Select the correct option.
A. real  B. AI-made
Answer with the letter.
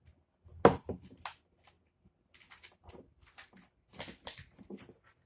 A